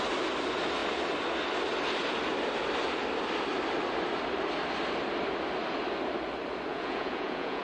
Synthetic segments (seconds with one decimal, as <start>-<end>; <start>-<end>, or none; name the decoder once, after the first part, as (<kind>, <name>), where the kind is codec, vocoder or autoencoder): 6.7-7.6 (vocoder, Vocos)